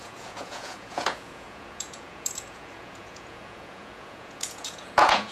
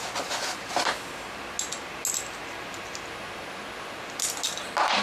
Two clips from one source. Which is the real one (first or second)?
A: second